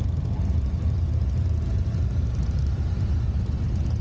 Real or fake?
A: fake